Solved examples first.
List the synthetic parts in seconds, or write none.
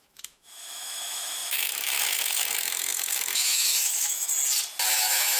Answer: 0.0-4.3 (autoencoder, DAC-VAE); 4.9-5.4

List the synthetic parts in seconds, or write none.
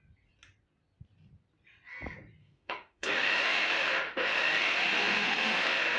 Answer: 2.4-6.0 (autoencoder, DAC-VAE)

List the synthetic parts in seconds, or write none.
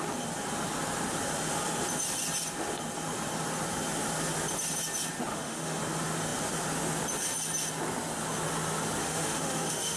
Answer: 5.3-5.8 (autoencoder, DAC-VAE); 9.0-10.0